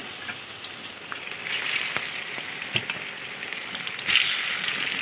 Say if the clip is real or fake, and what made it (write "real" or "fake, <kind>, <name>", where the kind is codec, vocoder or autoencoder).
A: real